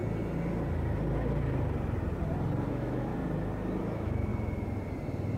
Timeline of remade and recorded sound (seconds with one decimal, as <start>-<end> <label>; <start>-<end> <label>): 0.0-2.7 recorded; 2.7-3.1 remade; 3.1-3.8 recorded; 3.8-4.3 remade; 4.3-5.4 recorded